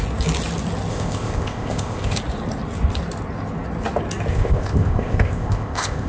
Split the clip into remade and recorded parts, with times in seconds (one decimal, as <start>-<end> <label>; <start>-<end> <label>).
0.0-0.9 recorded; 0.9-2.2 remade; 2.2-4.3 recorded; 4.3-6.1 remade